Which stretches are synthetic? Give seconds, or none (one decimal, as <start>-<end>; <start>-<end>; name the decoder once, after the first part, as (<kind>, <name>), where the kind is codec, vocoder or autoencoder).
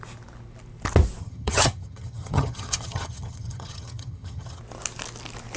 1.2-4.6 (vocoder, HiFi-GAN)